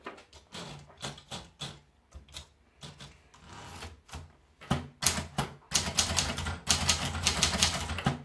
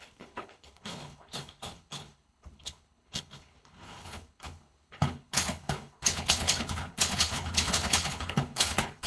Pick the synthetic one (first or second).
second